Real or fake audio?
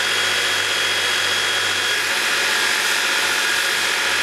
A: real